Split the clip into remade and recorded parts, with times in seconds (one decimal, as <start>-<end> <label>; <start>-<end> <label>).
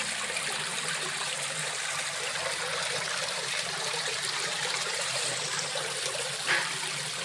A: 0.0-0.7 recorded; 0.7-1.7 remade; 1.7-3.2 recorded; 3.2-5.7 remade; 5.7-7.2 recorded